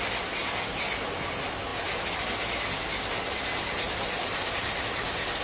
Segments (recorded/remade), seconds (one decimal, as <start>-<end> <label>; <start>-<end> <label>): 0.0-5.4 recorded